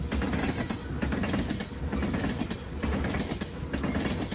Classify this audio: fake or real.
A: real